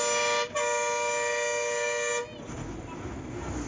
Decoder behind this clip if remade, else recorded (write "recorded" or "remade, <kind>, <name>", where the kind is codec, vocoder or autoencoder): recorded